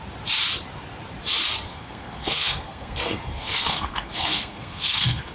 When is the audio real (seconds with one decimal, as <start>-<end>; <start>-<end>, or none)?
0.0-1.7